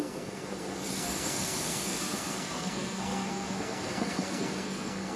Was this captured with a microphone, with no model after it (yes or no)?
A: no